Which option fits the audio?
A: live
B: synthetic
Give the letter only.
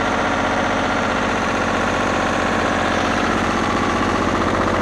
B